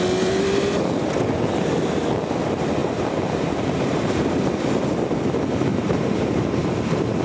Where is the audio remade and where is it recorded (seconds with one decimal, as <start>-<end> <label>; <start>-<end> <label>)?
0.0-2.8 recorded; 2.8-4.4 remade; 4.4-5.7 recorded; 5.7-7.2 remade